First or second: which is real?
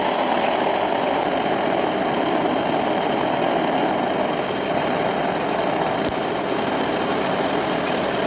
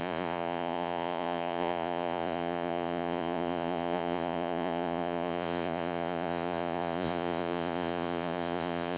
first